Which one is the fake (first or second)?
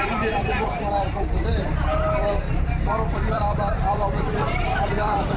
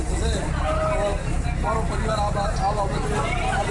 first